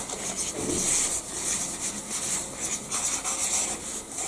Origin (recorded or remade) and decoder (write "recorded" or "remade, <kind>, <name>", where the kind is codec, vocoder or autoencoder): recorded